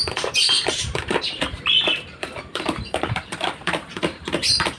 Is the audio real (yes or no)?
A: no